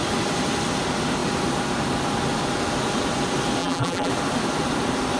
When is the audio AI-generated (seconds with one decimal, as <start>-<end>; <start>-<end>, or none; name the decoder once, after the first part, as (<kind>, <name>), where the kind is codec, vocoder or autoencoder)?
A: 3.6-4.1 (vocoder, BigVGAN v2)